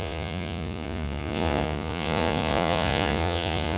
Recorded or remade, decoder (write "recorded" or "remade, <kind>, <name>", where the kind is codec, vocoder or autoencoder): remade, vocoder, Vocos